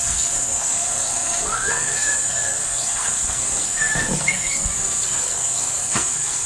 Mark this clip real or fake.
fake